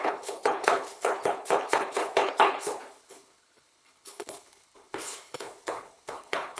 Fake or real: fake